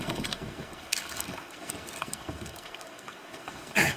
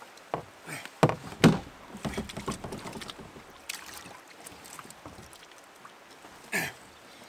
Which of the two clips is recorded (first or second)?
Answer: second